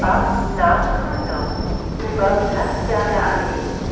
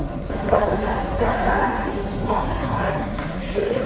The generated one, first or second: second